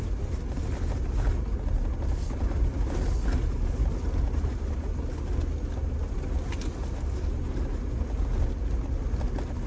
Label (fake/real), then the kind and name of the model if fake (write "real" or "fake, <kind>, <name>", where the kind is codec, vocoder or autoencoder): real